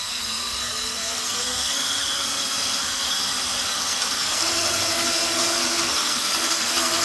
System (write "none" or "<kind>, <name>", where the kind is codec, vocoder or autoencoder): codec, SNAC